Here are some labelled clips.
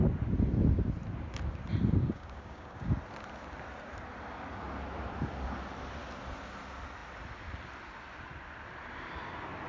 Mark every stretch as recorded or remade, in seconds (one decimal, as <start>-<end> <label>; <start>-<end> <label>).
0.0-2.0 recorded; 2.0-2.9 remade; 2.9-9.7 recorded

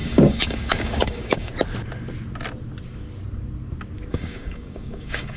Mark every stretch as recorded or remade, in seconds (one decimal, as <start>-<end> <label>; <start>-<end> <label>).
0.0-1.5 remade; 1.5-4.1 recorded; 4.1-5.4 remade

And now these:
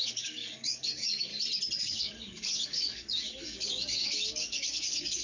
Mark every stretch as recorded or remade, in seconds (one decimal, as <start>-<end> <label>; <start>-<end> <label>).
0.0-1.3 remade; 1.3-1.8 recorded; 1.8-5.2 remade

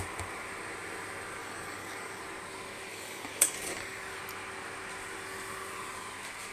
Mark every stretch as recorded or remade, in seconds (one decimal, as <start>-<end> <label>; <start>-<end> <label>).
0.0-1.4 recorded; 1.4-2.2 remade; 2.2-2.9 recorded; 2.9-4.2 remade; 4.2-6.5 recorded

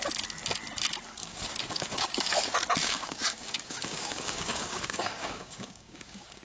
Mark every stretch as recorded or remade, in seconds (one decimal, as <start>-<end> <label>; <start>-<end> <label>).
0.0-1.2 recorded; 1.2-2.2 remade; 2.2-2.8 recorded; 2.8-6.4 remade